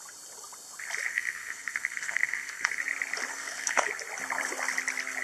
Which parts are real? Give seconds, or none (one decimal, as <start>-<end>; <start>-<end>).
0.0-1.1; 2.8-3.3; 3.9-5.2